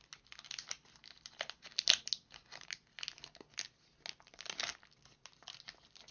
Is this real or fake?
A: real